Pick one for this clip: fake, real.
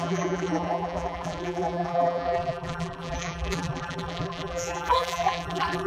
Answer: fake